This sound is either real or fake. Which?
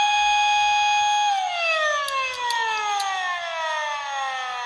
real